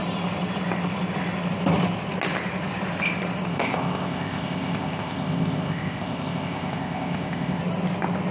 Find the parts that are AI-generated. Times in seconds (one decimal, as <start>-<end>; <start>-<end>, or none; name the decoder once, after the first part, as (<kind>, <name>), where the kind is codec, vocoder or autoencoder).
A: 3.5-7.6 (codec, ZipCodec)